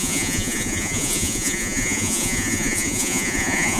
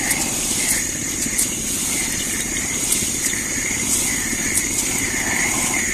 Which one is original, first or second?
second